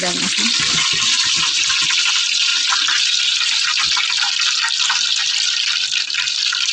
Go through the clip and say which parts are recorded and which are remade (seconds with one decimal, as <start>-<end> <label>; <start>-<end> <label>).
0.0-6.7 recorded

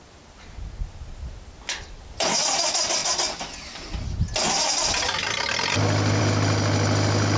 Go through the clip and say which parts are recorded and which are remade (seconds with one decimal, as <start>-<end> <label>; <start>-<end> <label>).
0.0-7.4 recorded

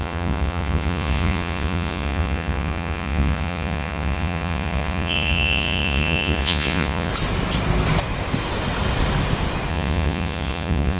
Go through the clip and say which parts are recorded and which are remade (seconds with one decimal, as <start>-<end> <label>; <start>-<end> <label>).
0.0-7.1 remade; 7.1-9.7 recorded; 9.7-11.0 remade

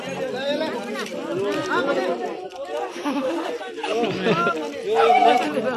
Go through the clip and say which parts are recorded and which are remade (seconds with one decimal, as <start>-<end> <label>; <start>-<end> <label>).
0.0-2.9 recorded; 2.9-3.5 remade; 3.5-5.8 recorded